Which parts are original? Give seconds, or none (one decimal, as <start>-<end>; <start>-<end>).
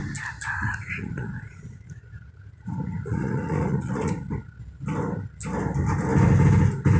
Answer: 0.0-0.6; 4.1-7.0